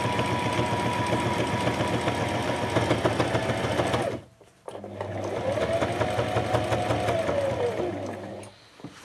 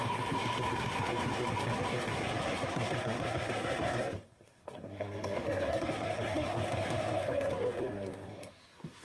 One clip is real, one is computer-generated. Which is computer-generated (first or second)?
second